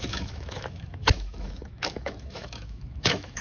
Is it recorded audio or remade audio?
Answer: remade